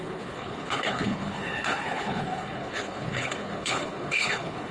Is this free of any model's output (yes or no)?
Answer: no